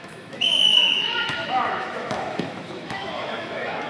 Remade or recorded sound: remade